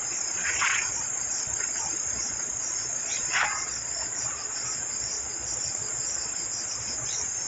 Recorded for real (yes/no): no